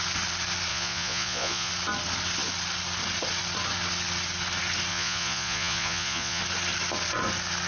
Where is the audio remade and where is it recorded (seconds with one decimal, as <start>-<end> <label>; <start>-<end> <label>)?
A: 0.0-0.7 recorded; 0.7-1.7 remade; 1.7-4.9 recorded; 4.9-6.4 remade; 6.4-7.7 recorded